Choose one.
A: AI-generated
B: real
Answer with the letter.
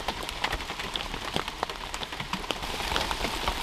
B